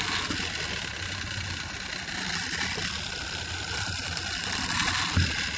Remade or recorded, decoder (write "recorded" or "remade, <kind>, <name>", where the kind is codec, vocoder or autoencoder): recorded